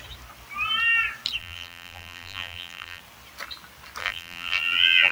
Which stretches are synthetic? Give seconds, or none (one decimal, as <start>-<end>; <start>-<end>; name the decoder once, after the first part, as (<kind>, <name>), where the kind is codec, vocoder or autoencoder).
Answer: 1.4-3.0 (vocoder, BigVGAN v2); 4.0-5.1